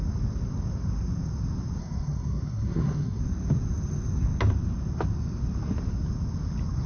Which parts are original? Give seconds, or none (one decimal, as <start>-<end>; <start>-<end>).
0.0-1.8; 3.2-6.9